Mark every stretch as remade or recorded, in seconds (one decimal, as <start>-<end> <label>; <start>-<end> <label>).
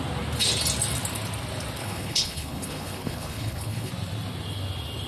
0.0-1.8 recorded; 1.8-3.9 remade; 3.9-5.1 recorded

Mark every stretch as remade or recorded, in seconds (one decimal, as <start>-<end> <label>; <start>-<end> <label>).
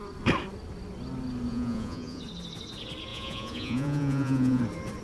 0.0-1.5 recorded; 1.5-2.2 remade; 2.2-3.1 recorded; 3.1-4.6 remade; 4.6-5.0 recorded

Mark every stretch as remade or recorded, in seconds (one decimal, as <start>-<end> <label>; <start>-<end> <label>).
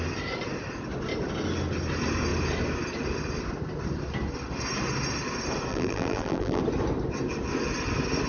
0.0-5.7 recorded; 5.7-6.6 remade; 6.6-8.3 recorded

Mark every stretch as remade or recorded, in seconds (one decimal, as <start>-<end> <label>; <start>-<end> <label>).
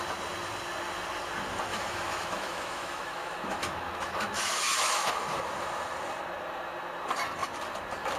0.0-1.7 recorded; 1.7-5.1 remade; 5.1-8.2 recorded